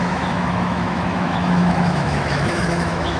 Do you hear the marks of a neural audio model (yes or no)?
yes